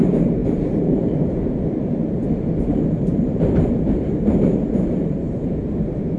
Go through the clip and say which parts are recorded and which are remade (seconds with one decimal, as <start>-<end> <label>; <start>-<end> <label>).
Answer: 0.0-6.2 remade

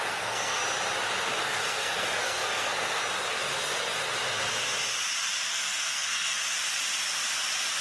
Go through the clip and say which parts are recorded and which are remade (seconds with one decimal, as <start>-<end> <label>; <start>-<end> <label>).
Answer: 0.0-0.6 remade; 0.6-1.4 recorded; 1.4-3.0 remade; 3.0-5.5 recorded; 5.5-6.4 remade; 6.4-7.8 recorded

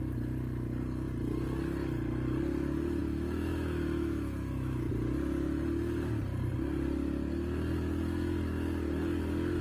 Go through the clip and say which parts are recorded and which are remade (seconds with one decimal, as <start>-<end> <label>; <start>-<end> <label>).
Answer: 0.0-3.0 recorded; 3.0-4.9 remade; 4.9-9.6 recorded

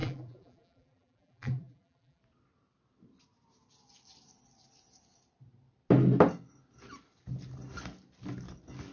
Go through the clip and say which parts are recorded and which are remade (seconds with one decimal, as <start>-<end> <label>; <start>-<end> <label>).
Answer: 0.0-2.2 remade; 2.2-8.9 recorded

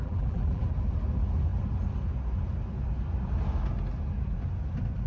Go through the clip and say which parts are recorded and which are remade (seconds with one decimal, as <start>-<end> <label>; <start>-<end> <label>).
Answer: 0.0-0.6 remade; 0.6-5.1 recorded

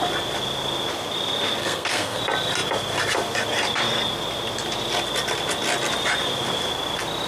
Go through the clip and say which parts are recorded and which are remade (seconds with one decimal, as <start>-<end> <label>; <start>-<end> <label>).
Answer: 0.0-1.6 recorded; 1.6-2.2 remade; 2.2-7.3 recorded

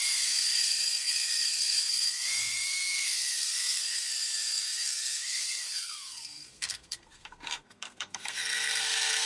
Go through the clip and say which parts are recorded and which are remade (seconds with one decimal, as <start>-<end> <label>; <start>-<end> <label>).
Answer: 0.0-9.3 remade

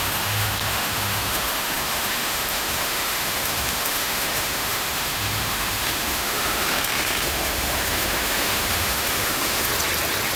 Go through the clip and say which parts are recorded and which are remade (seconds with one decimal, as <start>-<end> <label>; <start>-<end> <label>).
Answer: 0.0-9.7 remade; 9.7-10.4 recorded